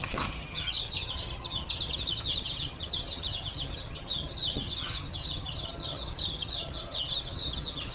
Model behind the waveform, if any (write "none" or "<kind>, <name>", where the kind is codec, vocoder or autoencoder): vocoder, HiFi-GAN